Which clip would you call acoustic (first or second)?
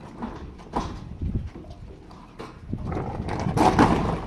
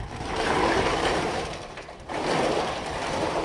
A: first